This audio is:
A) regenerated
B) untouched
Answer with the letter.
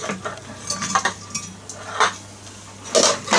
B